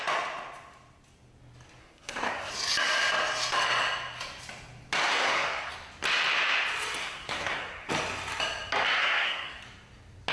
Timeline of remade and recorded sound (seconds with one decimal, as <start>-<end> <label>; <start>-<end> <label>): 0.0-1.8 recorded; 1.8-2.5 remade; 2.5-5.1 recorded; 5.1-5.7 remade; 5.7-7.0 recorded; 7.0-7.9 remade; 7.9-9.0 recorded; 9.0-9.6 remade; 9.6-10.3 recorded